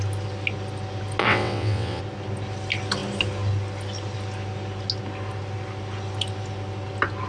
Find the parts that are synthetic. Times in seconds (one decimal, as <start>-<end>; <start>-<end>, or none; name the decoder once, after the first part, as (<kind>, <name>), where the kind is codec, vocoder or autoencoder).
1.2-2.0 (vocoder, WaveNeXt)